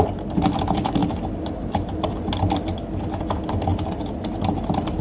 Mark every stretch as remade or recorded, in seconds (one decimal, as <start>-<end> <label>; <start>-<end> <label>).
0.0-5.0 recorded